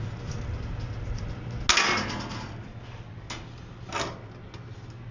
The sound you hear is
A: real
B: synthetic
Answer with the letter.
A